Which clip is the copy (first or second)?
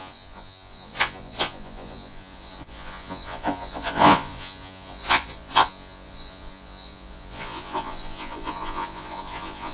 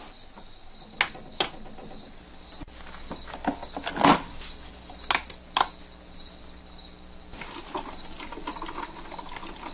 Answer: first